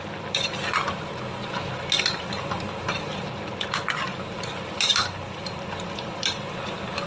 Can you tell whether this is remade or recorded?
recorded